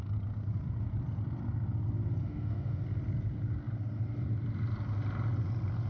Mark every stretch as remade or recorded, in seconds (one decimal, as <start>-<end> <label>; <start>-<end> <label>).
0.0-2.2 recorded; 2.2-2.8 remade; 2.8-5.9 recorded